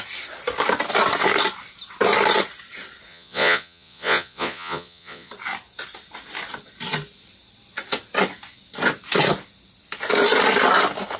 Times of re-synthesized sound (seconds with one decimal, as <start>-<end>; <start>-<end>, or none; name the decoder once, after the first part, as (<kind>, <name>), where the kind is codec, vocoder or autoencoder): 3.1-5.3 (vocoder, Vocos)